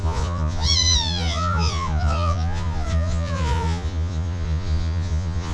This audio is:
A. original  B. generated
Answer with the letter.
B